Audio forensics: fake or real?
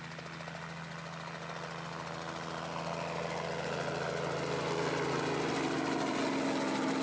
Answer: real